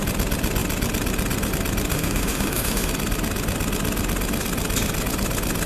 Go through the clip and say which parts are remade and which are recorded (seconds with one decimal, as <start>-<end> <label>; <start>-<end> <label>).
0.0-1.9 recorded; 1.9-2.9 remade; 2.9-5.7 recorded